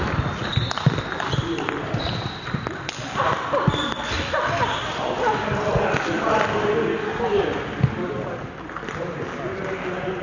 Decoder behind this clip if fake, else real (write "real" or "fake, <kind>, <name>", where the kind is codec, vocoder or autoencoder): real